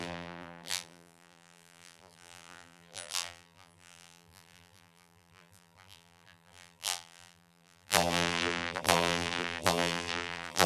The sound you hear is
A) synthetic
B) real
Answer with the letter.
A